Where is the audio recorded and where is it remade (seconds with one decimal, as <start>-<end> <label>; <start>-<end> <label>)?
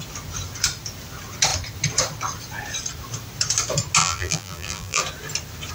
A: 0.0-4.0 recorded; 4.0-5.0 remade; 5.0-5.7 recorded